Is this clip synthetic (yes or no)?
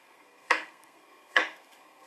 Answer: yes